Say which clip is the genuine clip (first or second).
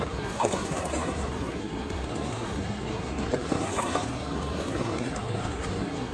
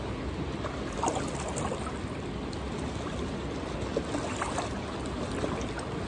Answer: second